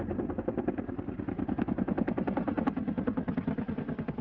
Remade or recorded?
recorded